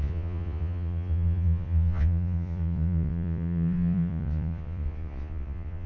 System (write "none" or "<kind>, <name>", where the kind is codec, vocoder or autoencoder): vocoder, Vocos